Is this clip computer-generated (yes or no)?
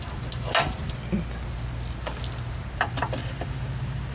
no